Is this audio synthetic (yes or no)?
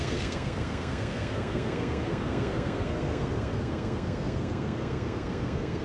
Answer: yes